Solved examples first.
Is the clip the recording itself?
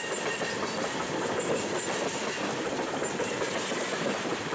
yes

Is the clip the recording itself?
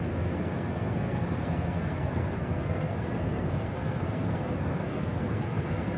no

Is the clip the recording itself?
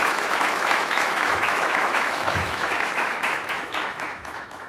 no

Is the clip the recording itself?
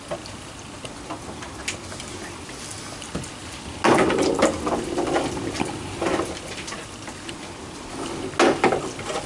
yes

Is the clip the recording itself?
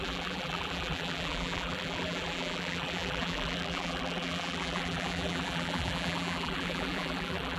no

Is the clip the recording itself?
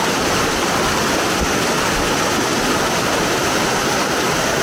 yes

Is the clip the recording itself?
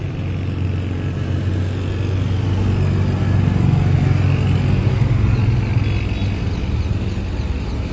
yes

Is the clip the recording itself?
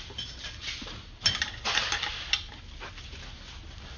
yes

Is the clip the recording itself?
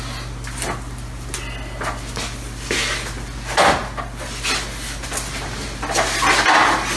yes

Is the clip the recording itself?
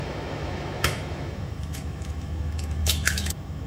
no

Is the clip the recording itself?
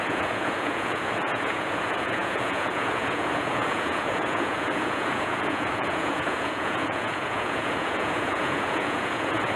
no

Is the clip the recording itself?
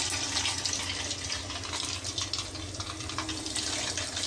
yes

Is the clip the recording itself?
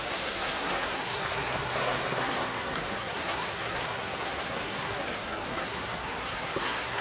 no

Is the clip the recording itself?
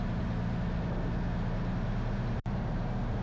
yes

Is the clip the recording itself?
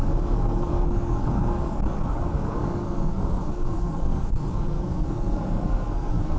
no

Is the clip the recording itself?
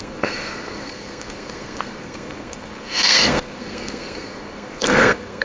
no